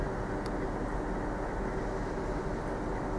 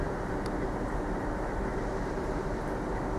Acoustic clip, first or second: first